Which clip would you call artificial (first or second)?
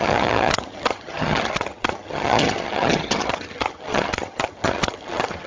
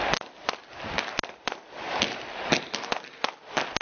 first